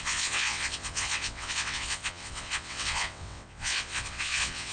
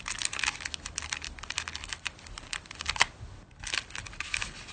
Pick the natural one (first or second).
second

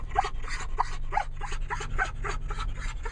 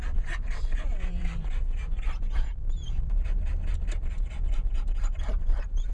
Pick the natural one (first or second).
first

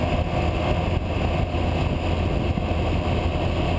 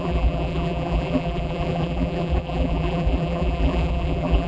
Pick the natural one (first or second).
first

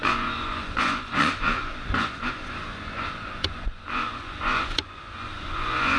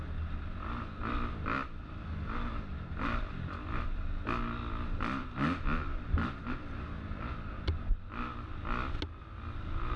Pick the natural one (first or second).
second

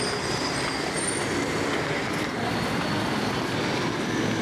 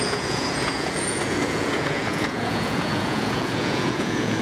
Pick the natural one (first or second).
first